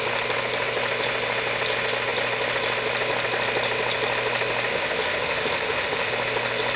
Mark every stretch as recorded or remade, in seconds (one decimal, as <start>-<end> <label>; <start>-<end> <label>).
0.0-4.7 recorded; 4.7-6.1 remade; 6.1-6.8 recorded